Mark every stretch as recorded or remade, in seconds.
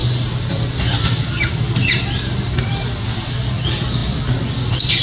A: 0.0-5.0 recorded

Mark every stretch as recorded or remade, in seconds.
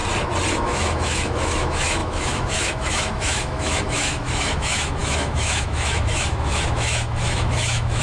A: 0.0-0.5 recorded; 0.5-8.0 remade